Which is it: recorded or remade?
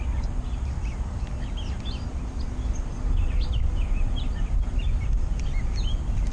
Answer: recorded